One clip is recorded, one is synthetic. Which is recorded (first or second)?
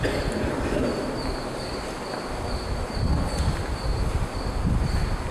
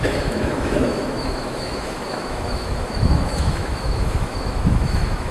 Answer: first